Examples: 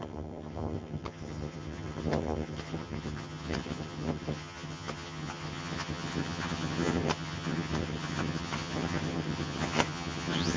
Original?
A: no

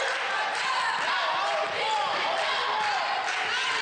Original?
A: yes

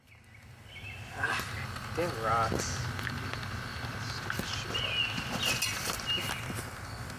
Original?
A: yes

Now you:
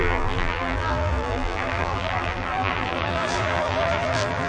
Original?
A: no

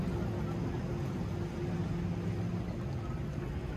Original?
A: yes